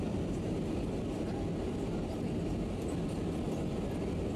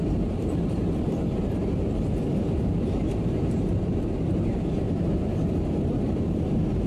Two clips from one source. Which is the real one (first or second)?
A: first